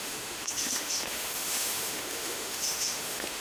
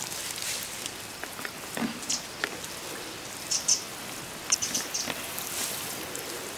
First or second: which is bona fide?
second